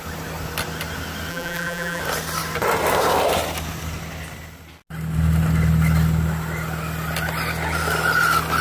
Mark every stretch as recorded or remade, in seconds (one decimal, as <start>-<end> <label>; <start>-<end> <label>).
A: 0.0-1.3 recorded; 1.3-2.0 remade; 2.0-8.6 recorded